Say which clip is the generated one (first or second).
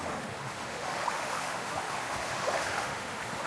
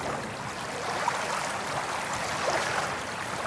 first